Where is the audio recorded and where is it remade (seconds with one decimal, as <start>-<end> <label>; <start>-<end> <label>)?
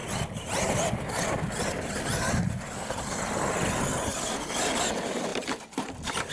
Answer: 0.0-5.3 recorded; 5.3-6.3 remade